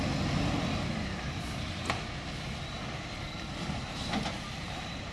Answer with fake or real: real